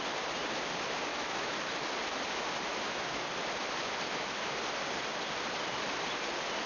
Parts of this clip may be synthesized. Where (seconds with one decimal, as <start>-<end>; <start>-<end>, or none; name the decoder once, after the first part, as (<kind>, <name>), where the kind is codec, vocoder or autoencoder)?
1.1-1.6 (autoencoder, DAC-VAE); 2.7-3.2